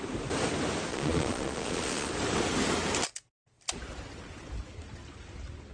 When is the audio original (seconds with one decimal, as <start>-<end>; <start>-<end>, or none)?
0.0-0.9; 2.1-5.7